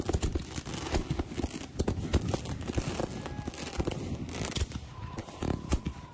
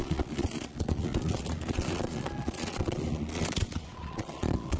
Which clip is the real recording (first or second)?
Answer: first